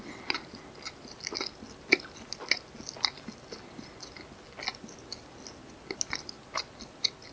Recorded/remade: recorded